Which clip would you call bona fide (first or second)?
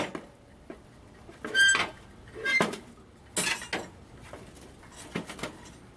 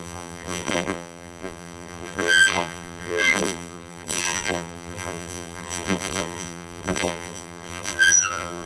first